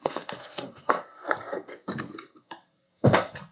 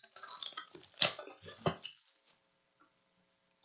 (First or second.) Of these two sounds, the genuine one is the second